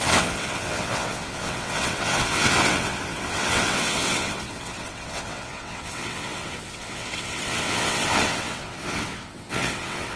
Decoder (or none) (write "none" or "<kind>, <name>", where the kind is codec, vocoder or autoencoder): vocoder, WaveNeXt